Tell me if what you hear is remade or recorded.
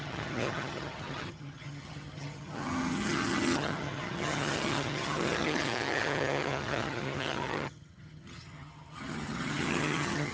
remade